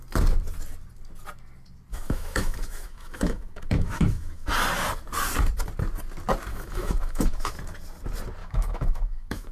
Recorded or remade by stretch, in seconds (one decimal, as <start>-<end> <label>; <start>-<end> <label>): 0.0-1.9 recorded; 1.9-4.5 remade; 4.5-6.5 recorded; 6.5-7.5 remade; 7.5-8.4 recorded; 8.4-9.5 remade